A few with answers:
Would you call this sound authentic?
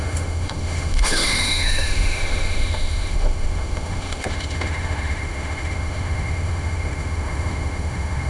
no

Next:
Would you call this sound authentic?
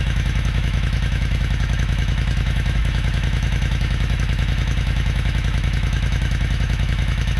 no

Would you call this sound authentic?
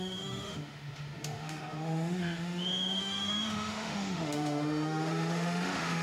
no